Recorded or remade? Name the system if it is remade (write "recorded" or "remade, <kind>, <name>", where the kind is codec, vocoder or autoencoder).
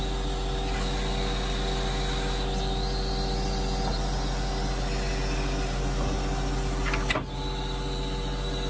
recorded